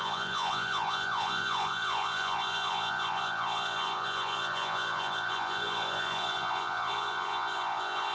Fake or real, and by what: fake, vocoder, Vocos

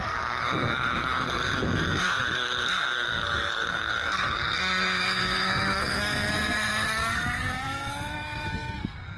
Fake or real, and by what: fake, codec, SNAC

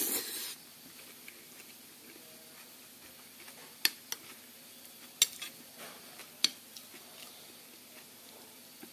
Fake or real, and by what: real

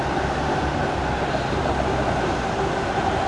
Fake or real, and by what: real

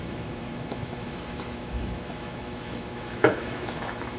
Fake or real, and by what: fake, autoencoder, DAC-VAE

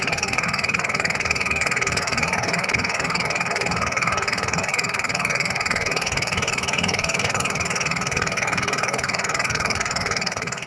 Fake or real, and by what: fake, codec, DAC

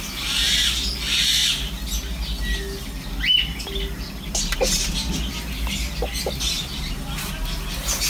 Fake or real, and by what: real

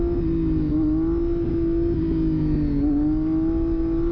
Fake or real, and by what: real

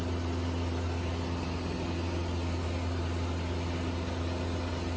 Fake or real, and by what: real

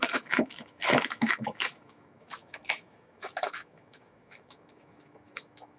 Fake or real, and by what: fake, autoencoder, DAC-VAE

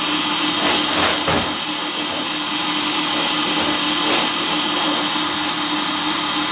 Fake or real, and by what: real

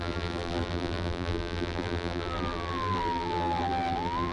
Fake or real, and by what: fake, vocoder, BigVGAN v2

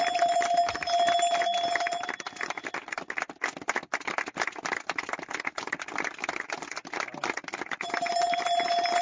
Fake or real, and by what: real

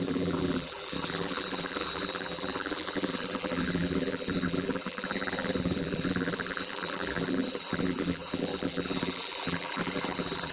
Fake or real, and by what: fake, vocoder, BigVGAN v2